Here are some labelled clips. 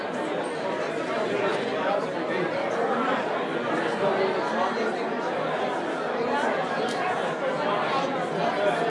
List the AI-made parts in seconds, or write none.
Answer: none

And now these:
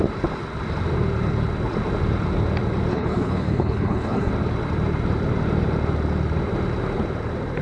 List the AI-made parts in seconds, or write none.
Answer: 2.9-4.3 (codec, HILCodec)

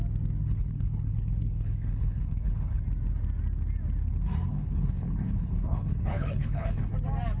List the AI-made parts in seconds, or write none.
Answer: 0.4-2.8 (codec, HILCodec); 4.5-6.9

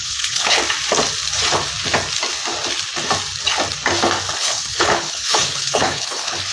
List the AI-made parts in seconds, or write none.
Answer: 0.0-0.6 (codec, HILCodec); 4.4-6.5

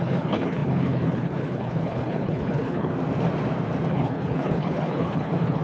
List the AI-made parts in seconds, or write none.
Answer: 0.0-2.9 (codec, HILCodec); 3.9-5.6

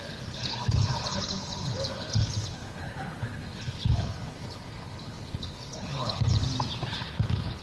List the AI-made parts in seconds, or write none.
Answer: 0.0-6.4 (codec, HILCodec); 6.9-7.6

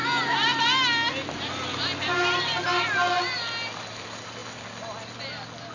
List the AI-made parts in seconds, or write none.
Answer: none

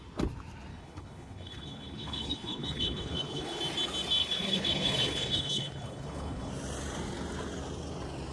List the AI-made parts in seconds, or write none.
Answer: 0.7-3.6 (codec, HILCodec); 4.2-6.5